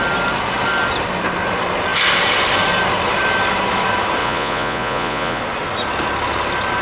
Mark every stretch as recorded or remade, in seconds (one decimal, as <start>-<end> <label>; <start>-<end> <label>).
0.0-4.2 recorded; 4.2-5.4 remade; 5.4-6.8 recorded